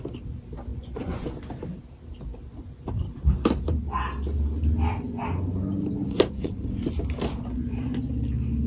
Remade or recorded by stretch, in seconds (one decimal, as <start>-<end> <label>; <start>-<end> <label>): 0.0-0.7 recorded; 0.7-1.3 remade; 1.3-6.0 recorded; 6.0-6.5 remade; 6.5-8.7 recorded